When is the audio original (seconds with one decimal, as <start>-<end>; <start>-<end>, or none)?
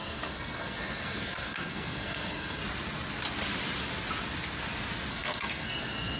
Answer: 2.6-5.1